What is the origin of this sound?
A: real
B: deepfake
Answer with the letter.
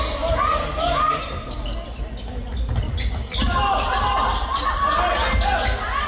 A